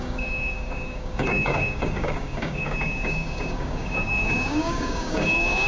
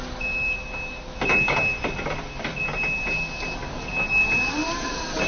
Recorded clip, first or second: second